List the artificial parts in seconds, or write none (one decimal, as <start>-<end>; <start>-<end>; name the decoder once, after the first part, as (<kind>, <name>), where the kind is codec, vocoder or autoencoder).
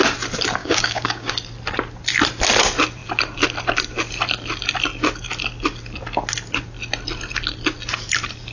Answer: 0.6-1.3 (codec, DAC)